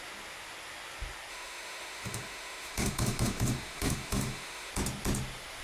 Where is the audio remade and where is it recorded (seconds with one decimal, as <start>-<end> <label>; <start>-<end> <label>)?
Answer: 0.0-1.3 recorded; 1.3-4.7 remade; 4.7-5.6 recorded